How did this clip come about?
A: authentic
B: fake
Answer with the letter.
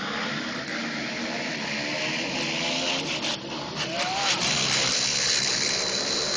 A